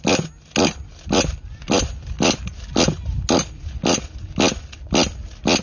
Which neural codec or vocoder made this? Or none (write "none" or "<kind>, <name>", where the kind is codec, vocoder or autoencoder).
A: none